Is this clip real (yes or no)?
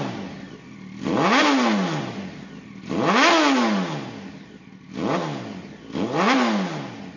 yes